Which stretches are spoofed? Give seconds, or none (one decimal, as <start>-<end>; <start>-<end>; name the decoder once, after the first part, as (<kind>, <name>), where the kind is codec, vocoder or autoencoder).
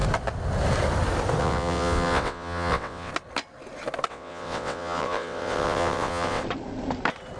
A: 1.4-3.1 (vocoder, WaveNeXt); 4.1-6.4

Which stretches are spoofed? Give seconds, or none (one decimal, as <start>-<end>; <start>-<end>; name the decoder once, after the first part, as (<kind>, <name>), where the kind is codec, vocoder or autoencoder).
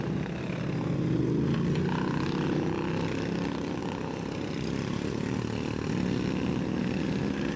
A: none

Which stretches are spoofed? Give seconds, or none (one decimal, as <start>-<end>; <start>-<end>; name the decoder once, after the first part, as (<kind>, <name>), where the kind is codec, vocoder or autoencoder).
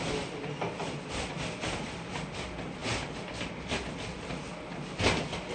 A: none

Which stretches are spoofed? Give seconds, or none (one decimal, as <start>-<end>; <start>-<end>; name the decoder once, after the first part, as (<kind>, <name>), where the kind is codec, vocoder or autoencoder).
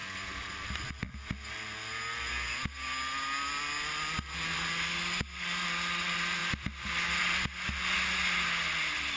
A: none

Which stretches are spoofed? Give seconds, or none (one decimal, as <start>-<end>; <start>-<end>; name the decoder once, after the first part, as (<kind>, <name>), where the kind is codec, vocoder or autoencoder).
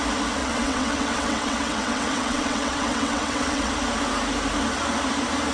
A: 0.4-3.7 (vocoder, WaveNeXt)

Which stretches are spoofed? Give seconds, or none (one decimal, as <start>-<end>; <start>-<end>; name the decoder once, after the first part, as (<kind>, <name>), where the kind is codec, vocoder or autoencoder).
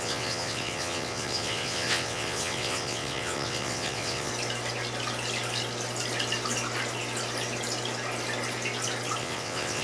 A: 0.0-4.3 (vocoder, WaveNeXt); 9.2-9.8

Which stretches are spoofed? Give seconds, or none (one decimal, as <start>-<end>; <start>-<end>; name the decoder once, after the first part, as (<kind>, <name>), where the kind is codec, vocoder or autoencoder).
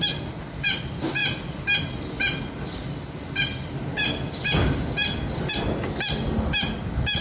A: none